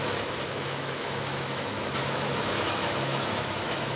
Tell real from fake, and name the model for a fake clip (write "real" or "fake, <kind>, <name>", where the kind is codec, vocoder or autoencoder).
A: fake, autoencoder, DAC-VAE